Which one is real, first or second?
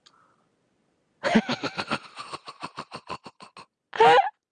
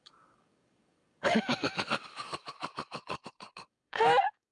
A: first